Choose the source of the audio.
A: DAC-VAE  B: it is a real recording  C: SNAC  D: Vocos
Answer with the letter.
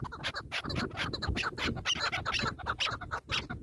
B